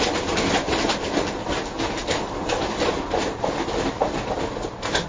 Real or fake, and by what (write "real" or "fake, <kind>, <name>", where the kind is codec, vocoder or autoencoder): real